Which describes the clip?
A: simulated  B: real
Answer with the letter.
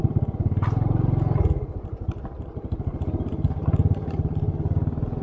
B